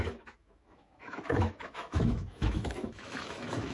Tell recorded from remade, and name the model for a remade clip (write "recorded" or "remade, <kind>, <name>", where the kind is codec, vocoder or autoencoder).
remade, autoencoder, DAC-VAE